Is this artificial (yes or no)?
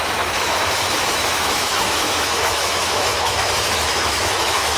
yes